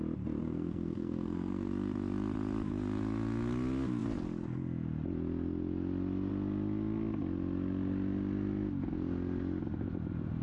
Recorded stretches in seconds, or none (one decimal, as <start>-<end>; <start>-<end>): 0.0-0.4; 1.7-10.4